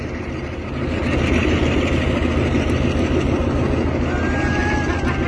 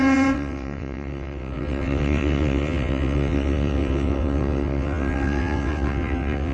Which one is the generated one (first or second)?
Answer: second